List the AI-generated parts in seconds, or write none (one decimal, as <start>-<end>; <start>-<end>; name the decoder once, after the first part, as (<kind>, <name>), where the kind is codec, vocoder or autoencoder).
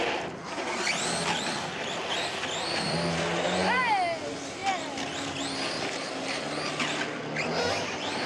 none